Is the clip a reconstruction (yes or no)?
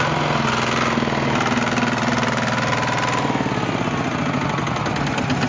no